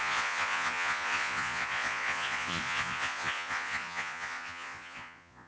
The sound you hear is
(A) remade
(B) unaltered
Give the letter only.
A